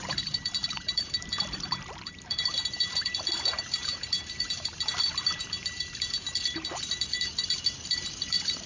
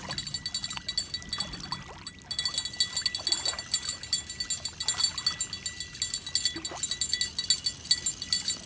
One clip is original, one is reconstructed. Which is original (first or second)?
second